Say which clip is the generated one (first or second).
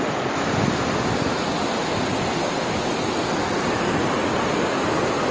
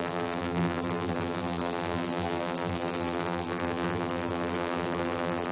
second